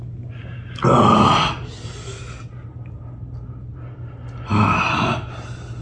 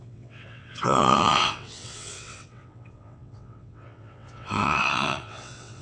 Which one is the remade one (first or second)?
second